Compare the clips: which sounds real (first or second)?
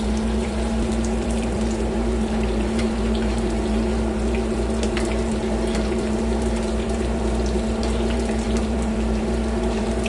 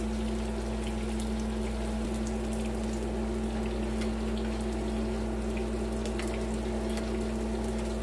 second